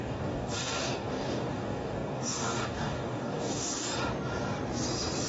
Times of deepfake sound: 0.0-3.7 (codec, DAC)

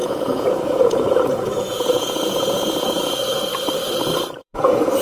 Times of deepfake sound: 0.0-3.0 (vocoder, Vocos); 4.4-5.0